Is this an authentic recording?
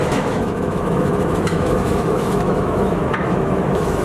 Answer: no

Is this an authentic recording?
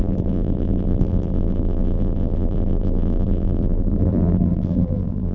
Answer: no